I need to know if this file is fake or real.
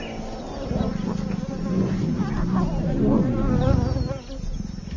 real